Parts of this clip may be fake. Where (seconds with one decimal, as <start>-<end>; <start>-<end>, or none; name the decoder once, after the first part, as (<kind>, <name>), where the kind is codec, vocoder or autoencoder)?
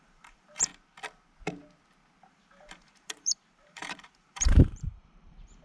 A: 0.0-0.7 (vocoder, BigVGAN v2); 2.3-5.6